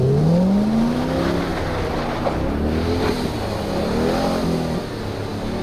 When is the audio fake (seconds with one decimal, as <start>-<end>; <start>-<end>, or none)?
none